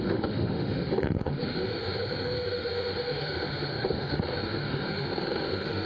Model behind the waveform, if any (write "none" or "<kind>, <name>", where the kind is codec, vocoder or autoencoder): autoencoder, DAC-VAE